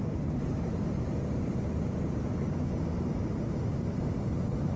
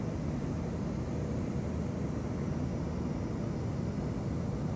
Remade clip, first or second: first